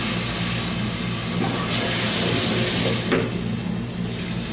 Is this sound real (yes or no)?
yes